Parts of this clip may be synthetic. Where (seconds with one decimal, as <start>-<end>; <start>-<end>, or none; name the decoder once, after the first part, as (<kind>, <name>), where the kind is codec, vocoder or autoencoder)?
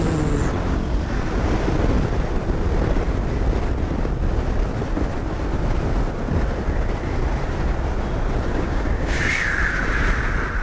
8.5-9.2 (codec, DAC)